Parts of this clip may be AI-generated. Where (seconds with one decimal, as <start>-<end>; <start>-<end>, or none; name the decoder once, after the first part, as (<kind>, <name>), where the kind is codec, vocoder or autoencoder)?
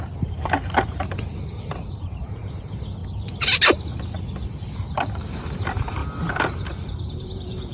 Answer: 0.0-3.0 (vocoder, BigVGAN v2); 5.5-6.0; 6.8-7.7